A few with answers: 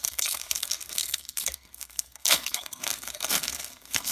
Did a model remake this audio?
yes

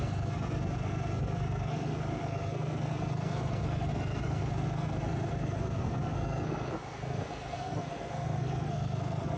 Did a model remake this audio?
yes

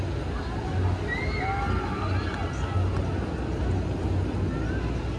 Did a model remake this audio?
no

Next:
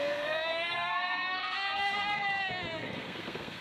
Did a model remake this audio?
yes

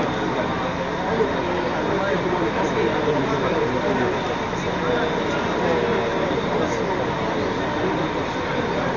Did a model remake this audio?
no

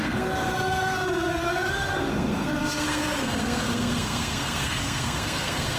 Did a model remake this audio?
yes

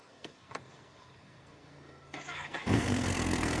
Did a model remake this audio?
yes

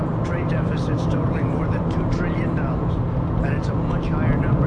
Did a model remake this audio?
no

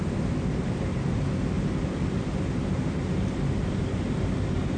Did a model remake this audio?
no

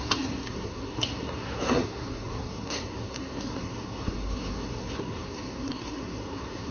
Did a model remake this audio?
yes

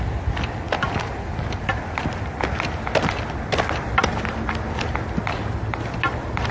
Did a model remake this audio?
no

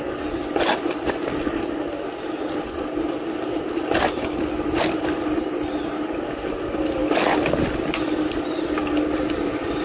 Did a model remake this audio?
no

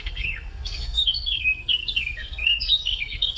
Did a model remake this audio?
yes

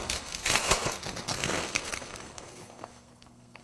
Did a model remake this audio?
yes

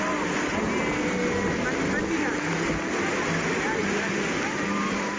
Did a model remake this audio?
no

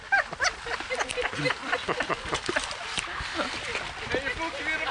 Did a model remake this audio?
no